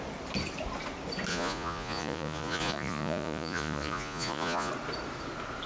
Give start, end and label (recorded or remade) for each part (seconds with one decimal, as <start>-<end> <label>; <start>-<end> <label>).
0.0-1.3 recorded; 1.3-4.7 remade; 4.7-5.7 recorded